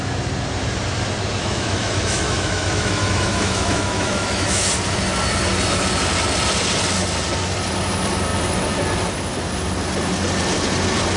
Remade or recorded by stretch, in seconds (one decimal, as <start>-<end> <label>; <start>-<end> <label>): 0.0-1.4 recorded; 1.4-4.7 remade; 4.7-11.2 recorded